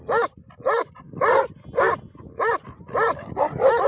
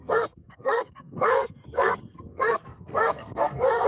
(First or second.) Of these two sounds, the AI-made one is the second